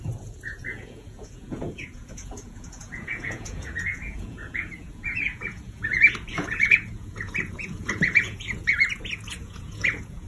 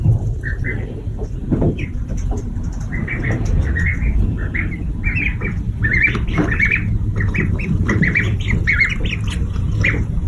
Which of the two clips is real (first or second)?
second